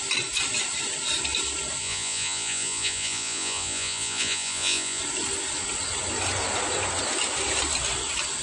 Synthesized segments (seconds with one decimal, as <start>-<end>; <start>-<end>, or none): 1.8-5.0